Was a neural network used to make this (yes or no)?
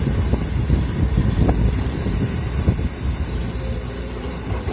yes